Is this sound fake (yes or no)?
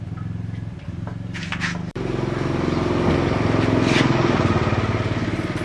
no